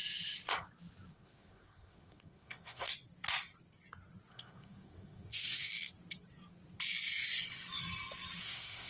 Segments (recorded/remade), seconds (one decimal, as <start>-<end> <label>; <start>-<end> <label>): 0.0-1.1 recorded; 1.1-2.9 remade; 2.9-4.3 recorded; 4.3-5.7 remade; 5.7-8.4 recorded; 8.4-8.9 remade